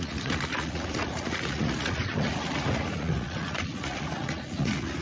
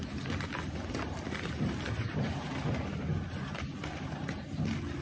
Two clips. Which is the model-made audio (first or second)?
first